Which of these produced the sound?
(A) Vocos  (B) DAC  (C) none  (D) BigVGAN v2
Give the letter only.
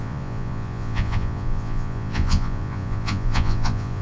A